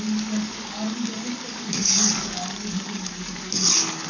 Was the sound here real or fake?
fake